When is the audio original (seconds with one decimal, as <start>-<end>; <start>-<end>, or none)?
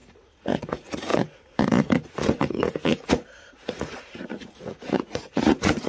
none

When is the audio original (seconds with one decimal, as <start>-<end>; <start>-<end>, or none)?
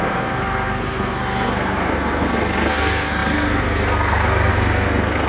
none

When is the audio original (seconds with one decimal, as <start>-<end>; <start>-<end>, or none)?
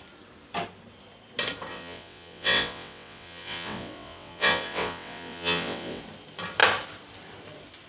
0.0-1.7; 6.0-7.9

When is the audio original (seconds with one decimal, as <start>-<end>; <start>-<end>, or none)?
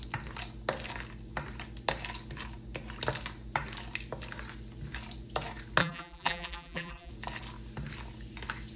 0.0-5.8; 7.1-8.8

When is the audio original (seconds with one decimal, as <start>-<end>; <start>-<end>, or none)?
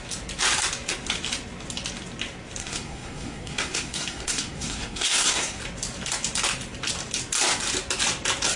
0.0-2.6; 5.6-8.6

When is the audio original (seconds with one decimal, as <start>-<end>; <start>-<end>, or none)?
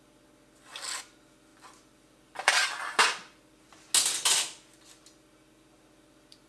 0.0-1.5; 3.7-6.5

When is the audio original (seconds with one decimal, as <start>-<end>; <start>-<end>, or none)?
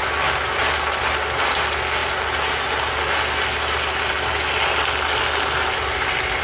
0.0-6.4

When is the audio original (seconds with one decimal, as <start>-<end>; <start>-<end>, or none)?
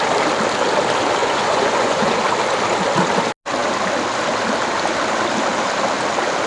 0.0-1.2; 2.2-6.5